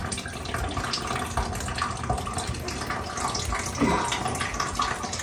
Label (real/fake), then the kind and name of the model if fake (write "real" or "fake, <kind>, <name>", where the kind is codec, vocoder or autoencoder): real